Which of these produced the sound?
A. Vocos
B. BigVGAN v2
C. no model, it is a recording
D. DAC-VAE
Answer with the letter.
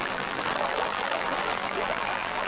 B